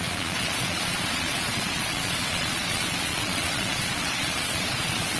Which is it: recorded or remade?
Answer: remade